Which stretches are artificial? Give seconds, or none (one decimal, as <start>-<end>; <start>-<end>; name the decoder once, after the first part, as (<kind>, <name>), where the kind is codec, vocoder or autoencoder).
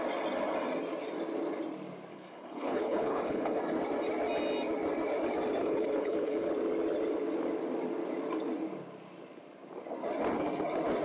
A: 2.1-3.6 (codec, HILCodec); 5.6-6.5